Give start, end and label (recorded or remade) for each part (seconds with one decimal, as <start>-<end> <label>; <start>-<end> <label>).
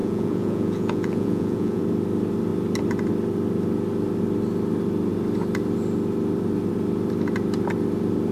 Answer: 0.0-1.8 remade; 1.8-8.3 recorded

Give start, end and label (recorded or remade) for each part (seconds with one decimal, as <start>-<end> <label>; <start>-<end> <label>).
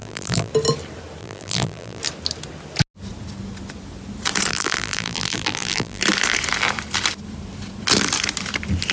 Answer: 0.0-0.5 remade; 0.5-1.2 recorded; 1.2-2.0 remade; 2.0-4.5 recorded; 4.5-6.0 remade; 6.0-8.9 recorded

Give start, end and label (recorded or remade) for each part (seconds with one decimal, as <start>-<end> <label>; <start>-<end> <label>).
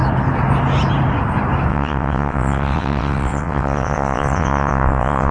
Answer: 0.0-1.7 recorded; 1.7-5.3 remade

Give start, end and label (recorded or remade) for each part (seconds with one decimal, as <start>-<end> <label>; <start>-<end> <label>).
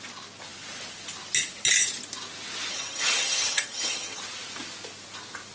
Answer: 0.0-2.7 recorded; 2.7-4.2 remade; 4.2-5.5 recorded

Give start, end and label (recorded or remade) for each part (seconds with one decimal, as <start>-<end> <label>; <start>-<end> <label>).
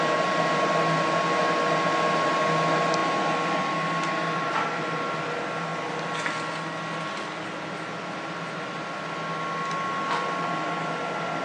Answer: 0.0-11.4 recorded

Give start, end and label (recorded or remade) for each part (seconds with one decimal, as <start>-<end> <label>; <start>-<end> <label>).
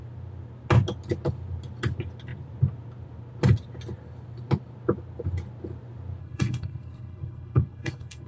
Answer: 0.0-6.2 recorded; 6.2-8.3 remade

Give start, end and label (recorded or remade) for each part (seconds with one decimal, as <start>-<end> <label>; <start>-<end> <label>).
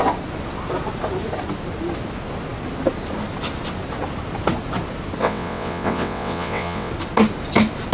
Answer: 0.0-5.2 recorded; 5.2-6.9 remade; 6.9-7.9 recorded